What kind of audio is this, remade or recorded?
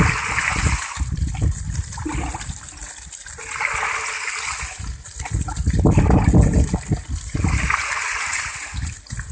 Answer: recorded